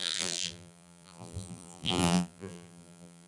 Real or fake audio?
fake